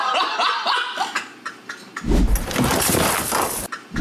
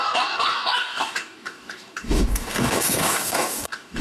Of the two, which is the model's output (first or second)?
second